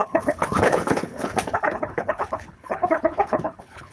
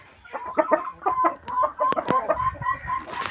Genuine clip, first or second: second